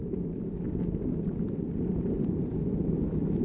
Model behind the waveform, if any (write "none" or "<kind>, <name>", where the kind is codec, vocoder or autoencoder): none